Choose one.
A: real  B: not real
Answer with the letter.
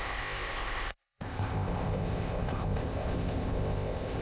B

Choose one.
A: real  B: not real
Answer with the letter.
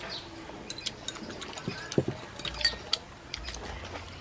A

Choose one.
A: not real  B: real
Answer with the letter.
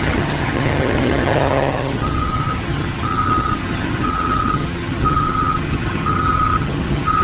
A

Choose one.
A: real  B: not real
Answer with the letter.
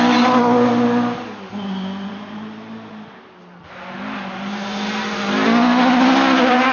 A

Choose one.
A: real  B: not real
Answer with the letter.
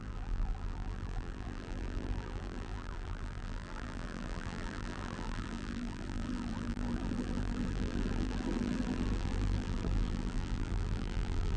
B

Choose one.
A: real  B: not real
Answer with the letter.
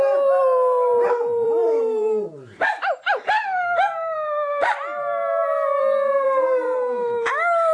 B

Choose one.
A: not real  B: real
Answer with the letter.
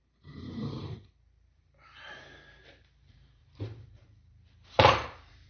A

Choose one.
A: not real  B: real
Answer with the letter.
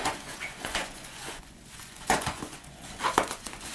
A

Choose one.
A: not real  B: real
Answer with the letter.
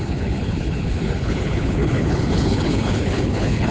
A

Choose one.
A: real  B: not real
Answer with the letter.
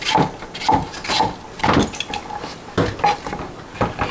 A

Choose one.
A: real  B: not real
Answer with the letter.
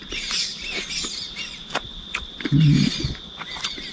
A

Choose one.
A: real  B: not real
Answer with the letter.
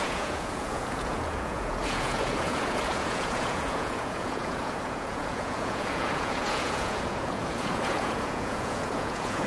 B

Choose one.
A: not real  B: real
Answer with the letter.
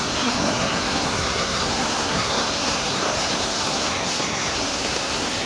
A